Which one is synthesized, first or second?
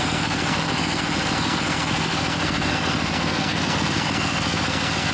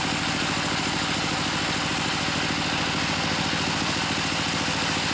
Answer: first